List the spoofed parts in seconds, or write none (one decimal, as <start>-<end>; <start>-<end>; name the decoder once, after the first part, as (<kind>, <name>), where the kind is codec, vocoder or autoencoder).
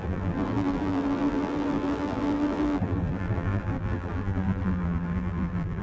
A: 0.0-5.8 (vocoder, BigVGAN v2)